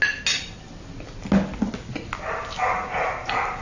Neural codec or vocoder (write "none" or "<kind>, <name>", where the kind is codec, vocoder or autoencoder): none